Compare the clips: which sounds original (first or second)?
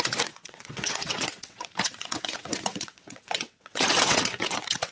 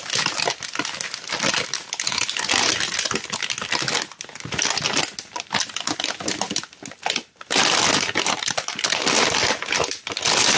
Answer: second